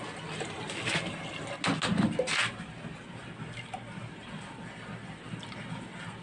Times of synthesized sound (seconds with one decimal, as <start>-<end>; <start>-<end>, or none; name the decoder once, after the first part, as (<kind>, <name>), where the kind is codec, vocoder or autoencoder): none